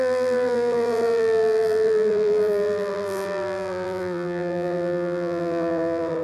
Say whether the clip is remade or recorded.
remade